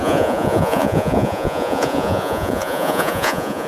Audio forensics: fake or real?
fake